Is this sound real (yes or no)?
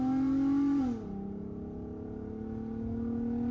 yes